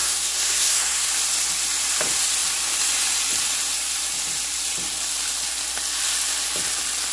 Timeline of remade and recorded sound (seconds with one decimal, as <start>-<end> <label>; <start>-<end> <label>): 0.0-1.1 remade; 1.1-7.1 recorded